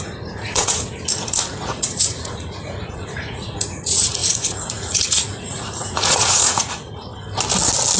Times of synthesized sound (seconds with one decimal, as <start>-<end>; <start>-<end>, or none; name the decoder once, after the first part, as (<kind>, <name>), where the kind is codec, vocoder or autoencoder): 0.0-0.9 (vocoder, Vocos); 1.6-7.1